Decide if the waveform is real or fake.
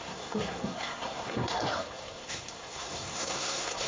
fake